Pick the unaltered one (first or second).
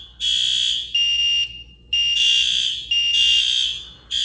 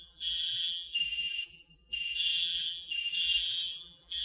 first